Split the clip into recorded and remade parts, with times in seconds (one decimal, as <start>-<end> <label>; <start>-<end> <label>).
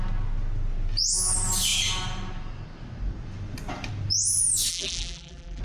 0.0-4.7 recorded; 4.7-5.6 remade